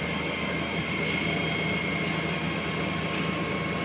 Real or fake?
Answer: real